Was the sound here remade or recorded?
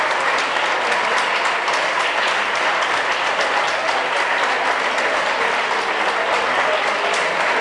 recorded